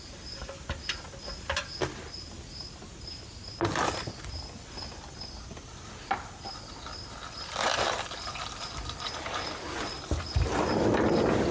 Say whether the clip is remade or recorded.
recorded